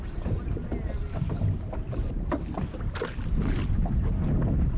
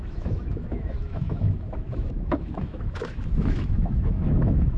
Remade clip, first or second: second